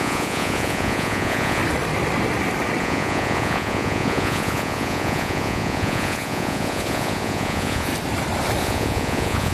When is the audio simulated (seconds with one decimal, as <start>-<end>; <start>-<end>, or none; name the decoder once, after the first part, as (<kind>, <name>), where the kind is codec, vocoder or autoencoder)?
0.0-1.6 (vocoder, Vocos); 2.8-7.9; 8.6-9.5